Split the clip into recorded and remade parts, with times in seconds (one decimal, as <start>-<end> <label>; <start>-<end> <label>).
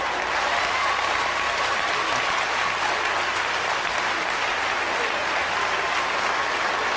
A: 0.0-7.0 recorded